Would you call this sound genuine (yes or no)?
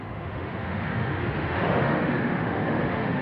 no